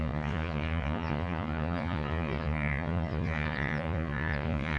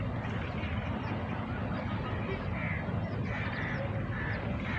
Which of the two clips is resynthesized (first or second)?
first